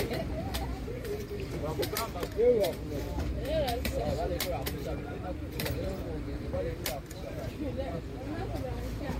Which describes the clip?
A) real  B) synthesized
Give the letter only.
B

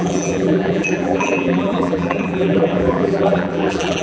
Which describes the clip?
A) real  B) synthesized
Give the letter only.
B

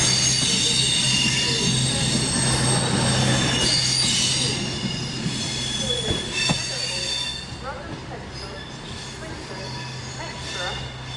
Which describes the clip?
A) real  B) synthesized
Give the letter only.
A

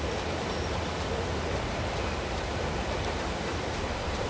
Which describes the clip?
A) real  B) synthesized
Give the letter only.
B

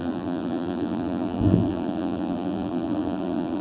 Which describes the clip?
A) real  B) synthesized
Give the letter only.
B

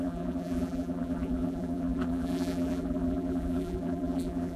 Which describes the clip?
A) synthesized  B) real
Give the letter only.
A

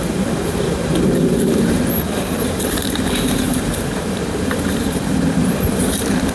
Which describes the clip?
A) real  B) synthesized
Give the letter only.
B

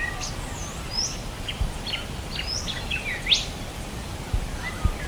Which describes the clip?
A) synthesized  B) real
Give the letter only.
B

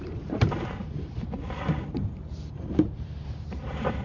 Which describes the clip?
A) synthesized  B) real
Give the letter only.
A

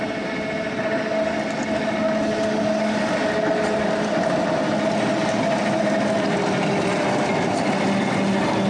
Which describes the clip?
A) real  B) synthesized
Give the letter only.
A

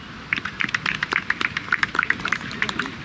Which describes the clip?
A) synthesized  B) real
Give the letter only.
A